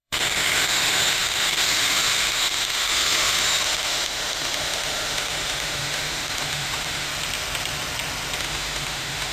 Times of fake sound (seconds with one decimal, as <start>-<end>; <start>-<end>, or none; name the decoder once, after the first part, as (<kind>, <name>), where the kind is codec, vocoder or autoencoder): 0.0-7.1 (autoencoder, DAC-VAE); 8.4-9.3